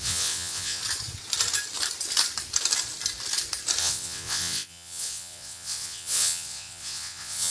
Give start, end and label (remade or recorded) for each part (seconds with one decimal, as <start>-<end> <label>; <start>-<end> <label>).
0.0-0.8 remade; 0.8-3.8 recorded; 3.8-7.5 remade